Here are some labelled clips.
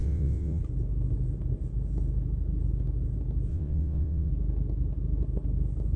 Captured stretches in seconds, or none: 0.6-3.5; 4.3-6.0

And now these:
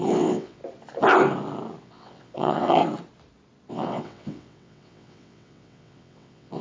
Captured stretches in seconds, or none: 0.6-1.8; 2.8-3.7

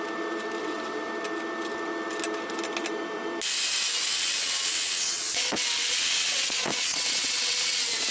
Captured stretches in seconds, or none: 0.0-0.6; 1.1-4.0

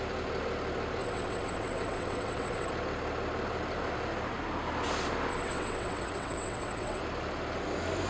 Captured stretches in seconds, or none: 0.0-1.0; 2.7-5.3; 7.0-8.1

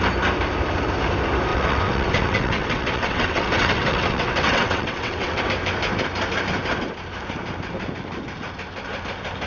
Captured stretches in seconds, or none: 0.0-1.5; 5.4-9.5

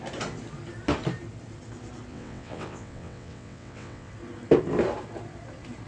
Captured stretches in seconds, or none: 0.0-2.1; 4.1-5.9

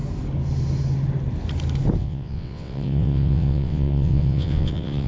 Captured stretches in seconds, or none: 0.0-2.0